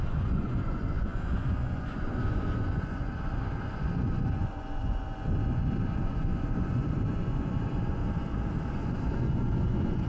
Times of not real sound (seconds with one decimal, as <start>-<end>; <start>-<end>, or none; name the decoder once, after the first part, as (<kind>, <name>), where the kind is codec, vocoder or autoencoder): 0.0-8.0 (vocoder, Vocos); 8.7-10.1